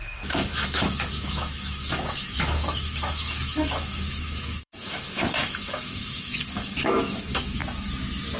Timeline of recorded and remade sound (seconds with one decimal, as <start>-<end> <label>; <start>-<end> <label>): 0.0-7.6 remade; 7.6-8.4 recorded